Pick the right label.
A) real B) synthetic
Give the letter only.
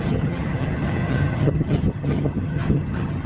B